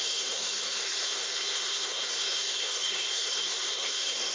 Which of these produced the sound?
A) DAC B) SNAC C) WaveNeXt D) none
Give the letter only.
B